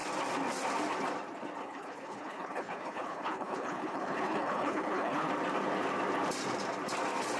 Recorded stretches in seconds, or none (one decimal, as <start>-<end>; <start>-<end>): 0.0-1.6; 5.3-7.4